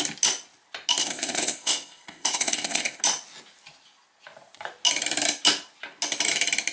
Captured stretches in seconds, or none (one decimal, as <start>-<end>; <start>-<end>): 0.0-1.0; 3.0-6.7